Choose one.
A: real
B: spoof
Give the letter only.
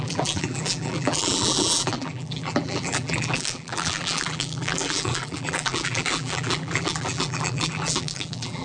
B